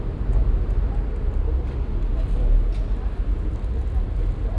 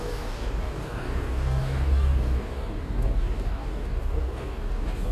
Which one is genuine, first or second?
first